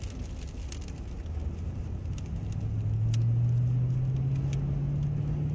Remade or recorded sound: recorded